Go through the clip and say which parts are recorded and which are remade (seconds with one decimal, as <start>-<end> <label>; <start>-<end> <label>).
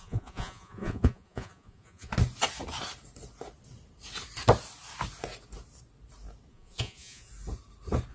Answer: 0.0-2.1 remade; 2.1-6.5 recorded; 6.5-7.3 remade; 7.3-8.1 recorded